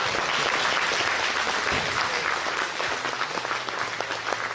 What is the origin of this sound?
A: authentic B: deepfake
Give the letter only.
A